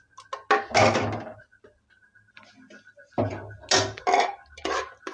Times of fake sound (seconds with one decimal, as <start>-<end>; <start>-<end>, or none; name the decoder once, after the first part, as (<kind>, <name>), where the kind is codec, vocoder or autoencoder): none